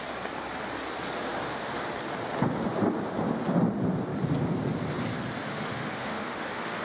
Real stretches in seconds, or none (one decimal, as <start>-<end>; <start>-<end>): 0.0-5.4